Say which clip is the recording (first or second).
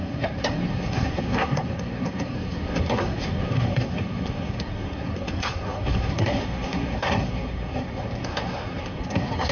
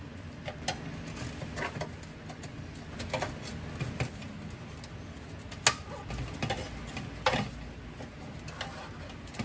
second